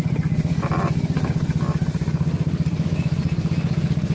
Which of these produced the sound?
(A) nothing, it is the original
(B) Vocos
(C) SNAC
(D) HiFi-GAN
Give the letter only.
A